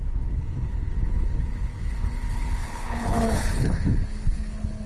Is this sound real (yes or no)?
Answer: no